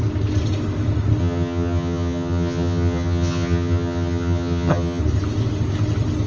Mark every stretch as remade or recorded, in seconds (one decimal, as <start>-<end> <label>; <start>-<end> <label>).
0.0-1.2 recorded; 1.2-5.0 remade; 5.0-6.3 recorded